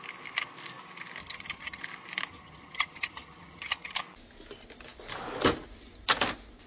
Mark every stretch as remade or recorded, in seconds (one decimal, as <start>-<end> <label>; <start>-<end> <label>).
0.0-1.2 recorded; 1.2-1.8 remade; 1.8-2.3 recorded; 2.3-4.0 remade; 4.0-6.7 recorded